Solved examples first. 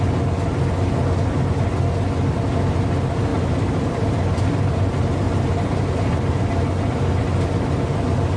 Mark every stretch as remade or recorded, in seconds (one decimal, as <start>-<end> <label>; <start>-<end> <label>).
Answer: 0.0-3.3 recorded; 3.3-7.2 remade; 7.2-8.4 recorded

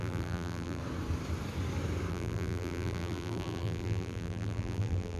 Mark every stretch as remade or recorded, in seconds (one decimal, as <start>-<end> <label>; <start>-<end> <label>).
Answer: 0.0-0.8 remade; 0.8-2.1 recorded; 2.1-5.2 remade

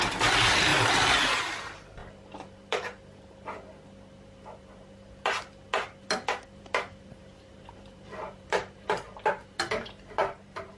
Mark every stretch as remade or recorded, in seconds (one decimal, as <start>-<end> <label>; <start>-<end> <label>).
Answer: 0.0-0.7 remade; 0.7-1.4 recorded; 1.4-2.0 remade; 2.0-6.6 recorded; 6.6-10.8 remade

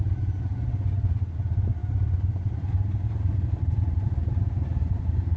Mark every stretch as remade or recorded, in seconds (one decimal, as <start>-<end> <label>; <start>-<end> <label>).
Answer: 0.0-1.8 recorded; 1.8-5.0 remade; 5.0-5.4 recorded